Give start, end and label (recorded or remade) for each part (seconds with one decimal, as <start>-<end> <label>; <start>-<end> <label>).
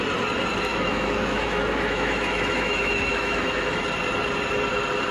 0.0-0.7 recorded; 0.7-3.8 remade; 3.8-5.1 recorded